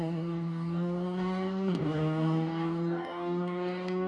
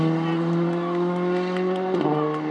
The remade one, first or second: first